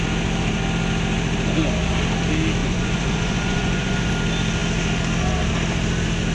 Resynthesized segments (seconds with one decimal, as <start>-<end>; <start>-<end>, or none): 2.6-4.1